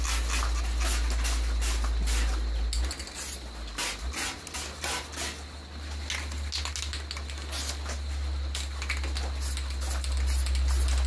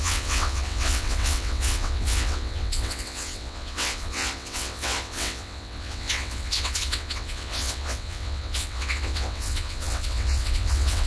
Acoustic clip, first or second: first